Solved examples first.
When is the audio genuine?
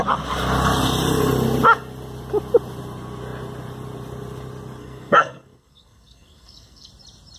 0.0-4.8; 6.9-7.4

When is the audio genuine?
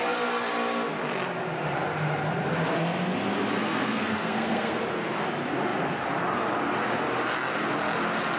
0.0-3.6; 4.8-8.4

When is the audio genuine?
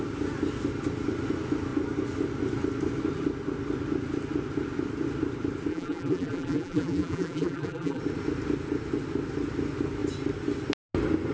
0.0-5.7; 8.0-11.3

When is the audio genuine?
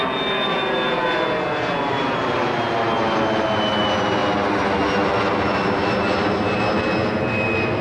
0.0-7.8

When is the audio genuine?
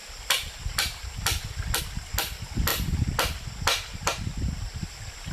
1.8-5.3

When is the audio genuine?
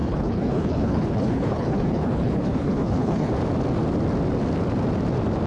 3.3-5.5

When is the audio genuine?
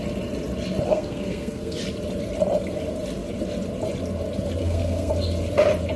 0.0-0.9; 1.8-4.6; 5.1-6.0